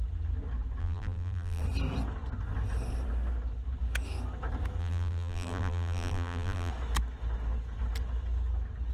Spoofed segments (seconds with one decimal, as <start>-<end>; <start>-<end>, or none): 0.8-1.6; 4.8-6.7